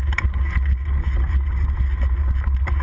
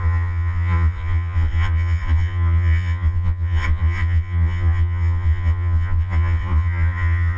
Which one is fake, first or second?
second